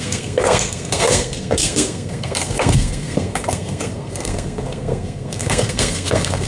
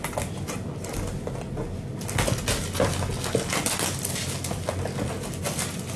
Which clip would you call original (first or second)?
second